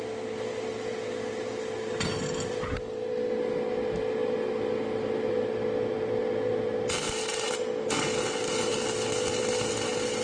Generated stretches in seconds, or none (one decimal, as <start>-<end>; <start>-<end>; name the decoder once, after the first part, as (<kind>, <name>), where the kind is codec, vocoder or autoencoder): none